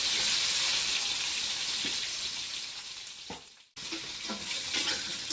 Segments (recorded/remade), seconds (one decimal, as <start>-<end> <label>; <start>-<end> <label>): 0.0-4.4 recorded; 4.4-5.3 remade